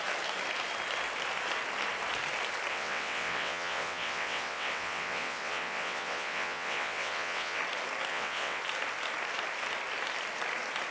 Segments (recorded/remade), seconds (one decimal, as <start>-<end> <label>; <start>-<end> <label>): 0.0-2.7 recorded; 2.7-7.6 remade; 7.6-8.1 recorded; 8.1-8.6 remade; 8.6-10.9 recorded

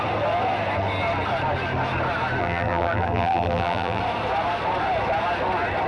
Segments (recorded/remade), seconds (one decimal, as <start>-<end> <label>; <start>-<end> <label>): 0.0-2.4 recorded; 2.4-4.0 remade; 4.0-5.9 recorded